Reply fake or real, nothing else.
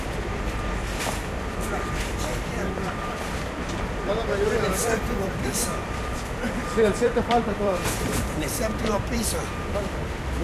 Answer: fake